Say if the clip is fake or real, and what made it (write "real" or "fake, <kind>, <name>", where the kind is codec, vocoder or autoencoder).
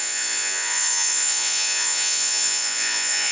fake, vocoder, Vocos